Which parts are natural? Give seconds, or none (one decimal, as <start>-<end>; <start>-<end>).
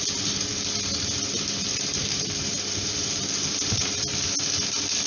0.0-2.0; 4.1-5.1